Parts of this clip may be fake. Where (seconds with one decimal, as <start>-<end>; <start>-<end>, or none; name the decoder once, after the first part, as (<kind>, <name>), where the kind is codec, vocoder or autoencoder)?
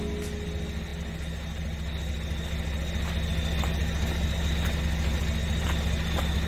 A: none